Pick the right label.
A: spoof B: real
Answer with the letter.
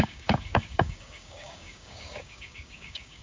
A